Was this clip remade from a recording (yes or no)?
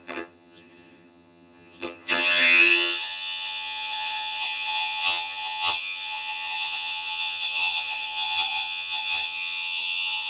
yes